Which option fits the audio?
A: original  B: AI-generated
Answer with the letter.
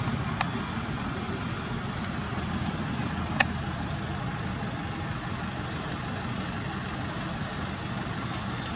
A